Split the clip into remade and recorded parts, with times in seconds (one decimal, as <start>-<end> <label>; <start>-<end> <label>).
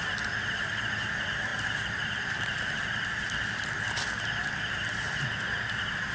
0.0-6.1 recorded